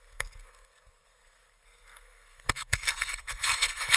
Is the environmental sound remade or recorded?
remade